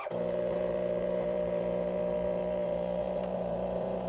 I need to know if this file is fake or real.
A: fake